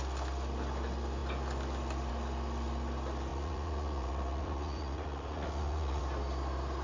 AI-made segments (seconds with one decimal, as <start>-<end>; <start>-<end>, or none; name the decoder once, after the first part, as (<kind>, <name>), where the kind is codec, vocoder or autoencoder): 3.3-6.0 (vocoder, Vocos)